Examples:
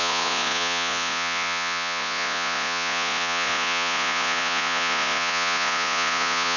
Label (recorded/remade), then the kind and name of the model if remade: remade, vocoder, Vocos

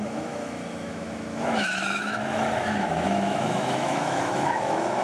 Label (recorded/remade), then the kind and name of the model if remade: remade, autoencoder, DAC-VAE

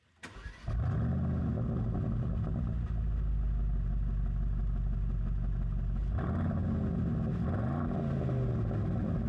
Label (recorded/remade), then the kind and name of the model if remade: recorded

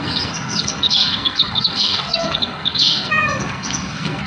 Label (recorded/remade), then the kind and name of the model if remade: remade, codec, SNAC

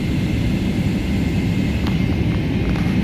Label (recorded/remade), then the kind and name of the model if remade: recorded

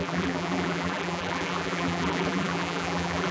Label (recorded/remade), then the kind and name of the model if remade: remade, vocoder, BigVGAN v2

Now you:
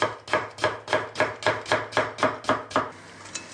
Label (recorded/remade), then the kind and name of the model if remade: recorded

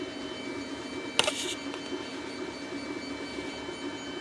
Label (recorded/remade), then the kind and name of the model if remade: recorded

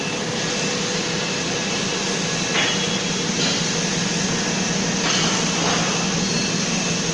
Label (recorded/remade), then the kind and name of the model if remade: recorded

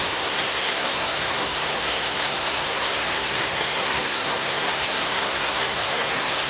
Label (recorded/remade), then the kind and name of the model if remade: remade, codec, SNAC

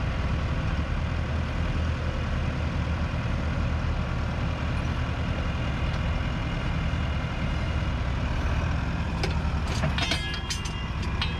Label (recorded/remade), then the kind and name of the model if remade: recorded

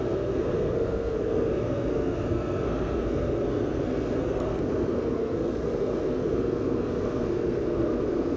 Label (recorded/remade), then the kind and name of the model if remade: remade, codec, SNAC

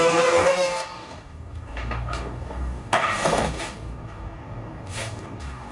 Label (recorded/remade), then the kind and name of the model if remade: remade, codec, DAC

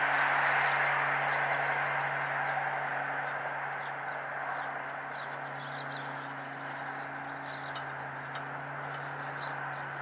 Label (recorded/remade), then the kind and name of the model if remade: recorded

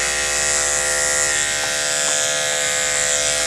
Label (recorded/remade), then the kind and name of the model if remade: recorded